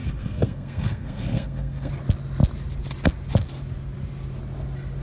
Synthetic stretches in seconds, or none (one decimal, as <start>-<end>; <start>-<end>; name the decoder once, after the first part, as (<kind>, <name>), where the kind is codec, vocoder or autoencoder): 0.0-1.9 (codec, SNAC)